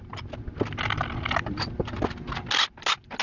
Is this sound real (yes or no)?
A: yes